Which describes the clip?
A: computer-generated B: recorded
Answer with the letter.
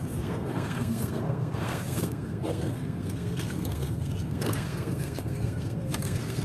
A